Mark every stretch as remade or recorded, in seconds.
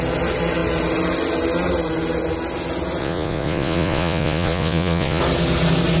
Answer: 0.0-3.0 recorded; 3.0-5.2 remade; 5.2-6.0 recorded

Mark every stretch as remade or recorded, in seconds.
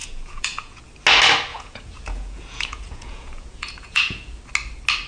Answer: 0.0-0.8 remade; 0.8-1.5 recorded; 1.5-4.4 remade; 4.4-5.1 recorded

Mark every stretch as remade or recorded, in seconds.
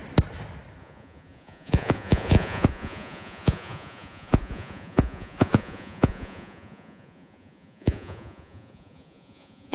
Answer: 0.0-0.8 recorded; 0.8-9.7 remade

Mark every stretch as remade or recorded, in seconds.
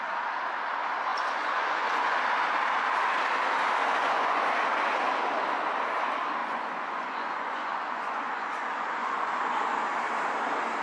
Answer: 0.0-1.1 recorded; 1.1-2.2 remade; 2.2-3.8 recorded; 3.8-4.4 remade; 4.4-6.4 recorded; 6.4-9.8 remade; 9.8-10.8 recorded